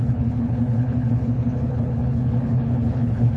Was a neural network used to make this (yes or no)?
yes